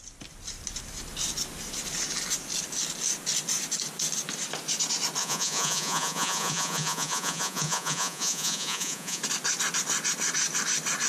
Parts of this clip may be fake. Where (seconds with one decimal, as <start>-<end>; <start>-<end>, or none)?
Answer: 5.2-9.2